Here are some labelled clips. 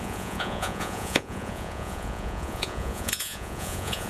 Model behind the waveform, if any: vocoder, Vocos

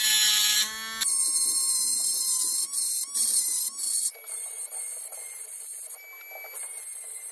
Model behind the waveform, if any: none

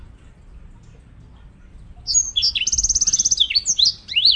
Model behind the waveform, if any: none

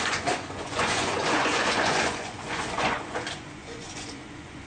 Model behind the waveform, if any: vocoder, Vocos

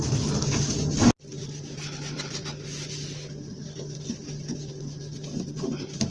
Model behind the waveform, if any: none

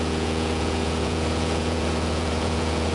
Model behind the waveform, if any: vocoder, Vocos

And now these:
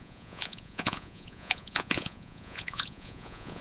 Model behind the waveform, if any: vocoder, Vocos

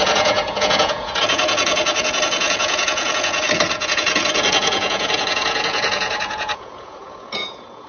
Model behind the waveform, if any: vocoder, Vocos